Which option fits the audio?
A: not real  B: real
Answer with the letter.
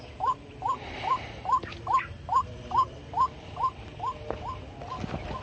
B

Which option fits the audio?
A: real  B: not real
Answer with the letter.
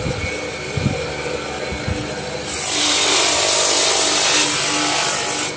A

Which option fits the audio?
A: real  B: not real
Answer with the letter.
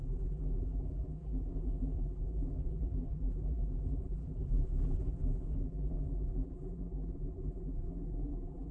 B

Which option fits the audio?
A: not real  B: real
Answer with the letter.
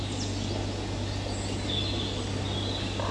B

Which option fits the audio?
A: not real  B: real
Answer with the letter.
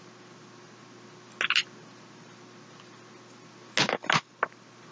B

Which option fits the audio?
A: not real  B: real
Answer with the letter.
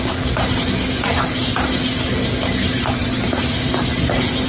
B